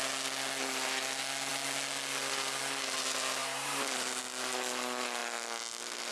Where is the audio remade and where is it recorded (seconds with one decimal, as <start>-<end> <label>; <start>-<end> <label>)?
0.0-3.4 recorded; 3.4-4.2 remade; 4.2-6.1 recorded